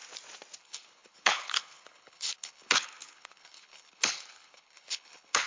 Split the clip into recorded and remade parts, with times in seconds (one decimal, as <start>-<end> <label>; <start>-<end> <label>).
0.0-0.6 recorded; 0.6-5.5 remade